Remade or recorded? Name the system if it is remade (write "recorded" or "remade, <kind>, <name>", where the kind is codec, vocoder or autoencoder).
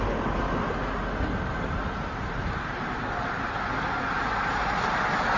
recorded